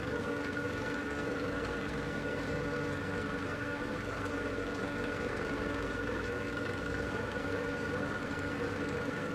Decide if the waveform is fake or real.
fake